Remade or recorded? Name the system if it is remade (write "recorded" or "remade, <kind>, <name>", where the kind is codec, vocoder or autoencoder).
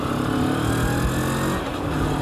recorded